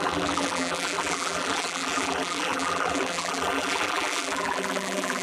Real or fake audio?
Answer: fake